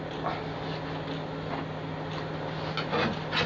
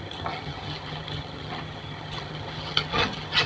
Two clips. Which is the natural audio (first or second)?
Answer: first